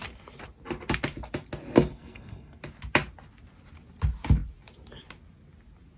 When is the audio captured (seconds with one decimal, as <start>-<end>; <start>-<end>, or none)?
0.0-1.9; 2.6-6.0